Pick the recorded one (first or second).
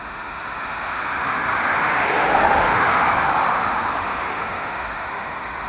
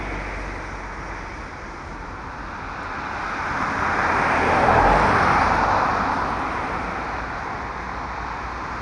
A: second